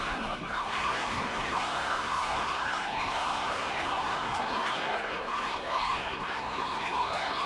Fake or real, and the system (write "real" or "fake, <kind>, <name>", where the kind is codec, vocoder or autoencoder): fake, codec, SNAC